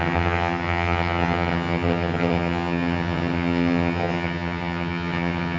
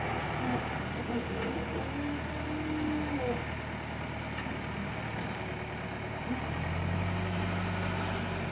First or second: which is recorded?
second